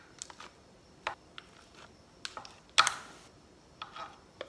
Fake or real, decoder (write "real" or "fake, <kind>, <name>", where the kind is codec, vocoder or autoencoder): real